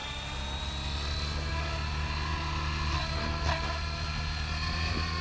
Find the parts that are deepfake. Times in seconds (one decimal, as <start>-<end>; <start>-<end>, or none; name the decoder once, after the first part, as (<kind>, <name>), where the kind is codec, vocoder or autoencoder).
none